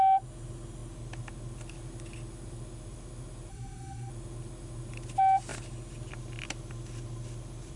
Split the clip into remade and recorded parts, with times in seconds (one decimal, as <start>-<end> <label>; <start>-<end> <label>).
0.0-3.5 recorded; 3.5-4.1 remade; 4.1-7.8 recorded